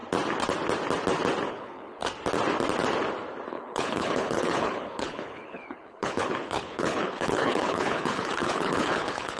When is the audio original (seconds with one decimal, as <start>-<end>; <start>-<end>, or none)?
0.0-1.5; 2.0-3.5